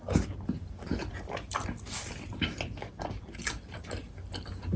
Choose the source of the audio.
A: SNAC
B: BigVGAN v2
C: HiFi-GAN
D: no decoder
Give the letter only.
D